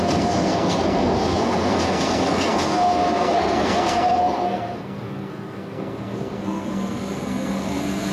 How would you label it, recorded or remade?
remade